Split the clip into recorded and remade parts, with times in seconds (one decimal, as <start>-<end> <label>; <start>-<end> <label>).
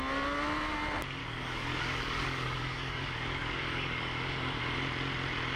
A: 0.0-1.2 recorded; 1.2-4.6 remade; 4.6-5.6 recorded